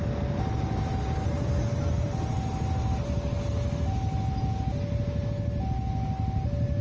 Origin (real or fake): real